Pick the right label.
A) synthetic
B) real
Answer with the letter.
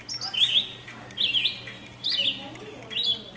B